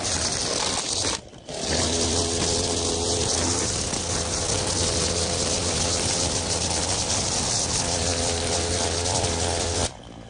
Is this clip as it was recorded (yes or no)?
yes